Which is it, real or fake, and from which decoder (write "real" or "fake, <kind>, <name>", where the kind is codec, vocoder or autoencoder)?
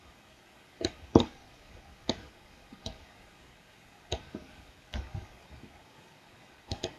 fake, codec, DAC